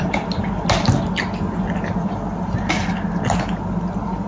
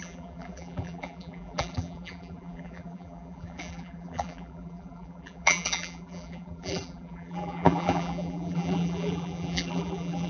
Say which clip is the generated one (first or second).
second